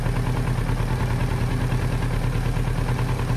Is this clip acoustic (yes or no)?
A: yes